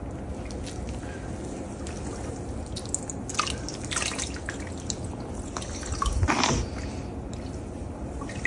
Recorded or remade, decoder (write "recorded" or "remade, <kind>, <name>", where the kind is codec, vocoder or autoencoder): recorded